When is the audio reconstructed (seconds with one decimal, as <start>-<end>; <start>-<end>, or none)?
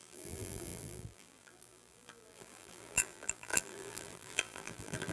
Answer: 0.0-5.1